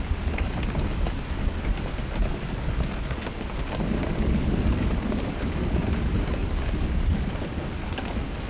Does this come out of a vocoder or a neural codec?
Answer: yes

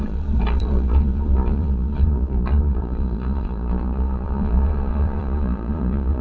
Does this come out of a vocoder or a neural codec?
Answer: yes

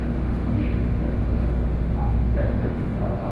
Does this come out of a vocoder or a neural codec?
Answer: yes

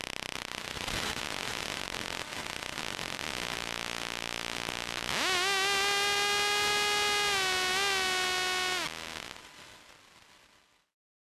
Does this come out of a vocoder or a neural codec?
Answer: no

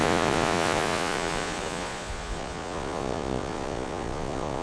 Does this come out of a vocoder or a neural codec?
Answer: yes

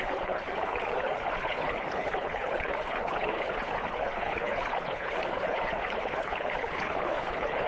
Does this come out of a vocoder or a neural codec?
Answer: yes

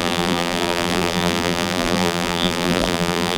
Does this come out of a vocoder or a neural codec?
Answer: yes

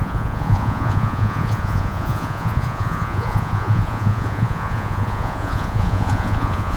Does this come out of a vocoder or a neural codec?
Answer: yes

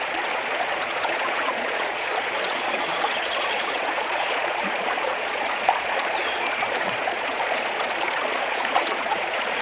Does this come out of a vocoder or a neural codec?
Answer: yes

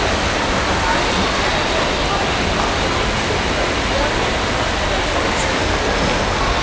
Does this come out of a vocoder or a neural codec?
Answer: no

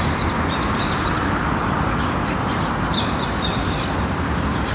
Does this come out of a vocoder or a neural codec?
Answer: no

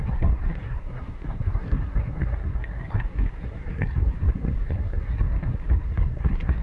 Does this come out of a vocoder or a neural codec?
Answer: yes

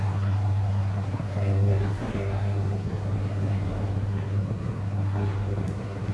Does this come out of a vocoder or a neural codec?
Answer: yes